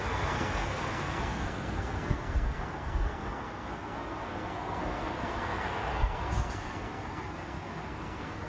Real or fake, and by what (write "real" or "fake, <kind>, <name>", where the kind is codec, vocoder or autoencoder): fake, codec, SNAC